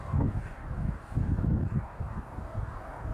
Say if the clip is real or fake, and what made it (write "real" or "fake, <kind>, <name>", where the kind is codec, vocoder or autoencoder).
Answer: fake, codec, DAC